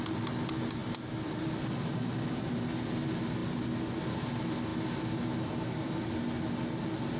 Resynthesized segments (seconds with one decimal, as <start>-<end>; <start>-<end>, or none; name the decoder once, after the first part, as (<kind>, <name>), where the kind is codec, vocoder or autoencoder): none